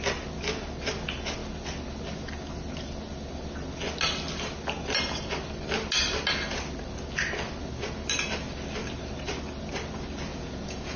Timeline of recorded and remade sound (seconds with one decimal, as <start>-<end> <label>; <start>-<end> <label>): 0.0-10.3 recorded; 10.3-11.0 remade